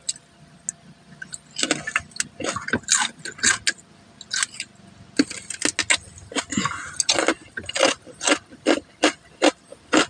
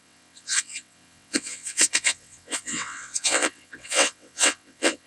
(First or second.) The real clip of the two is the first